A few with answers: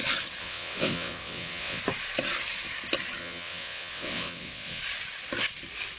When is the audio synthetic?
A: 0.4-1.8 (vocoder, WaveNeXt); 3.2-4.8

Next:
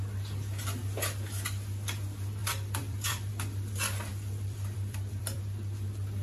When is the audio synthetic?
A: 2.4-3.3 (vocoder, BigVGAN v2); 4.1-5.4

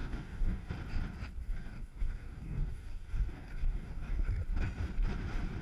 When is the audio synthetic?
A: 0.0-0.7 (codec, DAC); 1.4-4.4

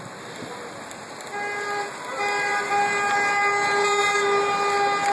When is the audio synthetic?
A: none

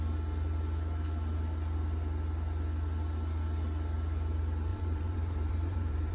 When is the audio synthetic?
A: 4.7-6.1 (vocoder, BigVGAN v2)

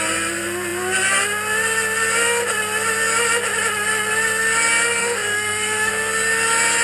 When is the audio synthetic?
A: 5.0-5.9 (codec, SNAC)

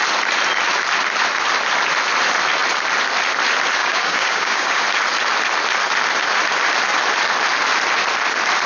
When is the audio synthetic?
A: 3.8-4.8 (codec, DAC)

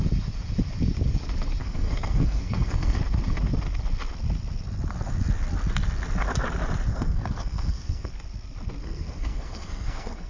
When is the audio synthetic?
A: 1.6-3.0 (codec, SNAC); 6.9-8.1; 8.8-10.3